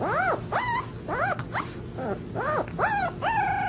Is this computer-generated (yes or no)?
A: no